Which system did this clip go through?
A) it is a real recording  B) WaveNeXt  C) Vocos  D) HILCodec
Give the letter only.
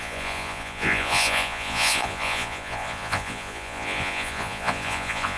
C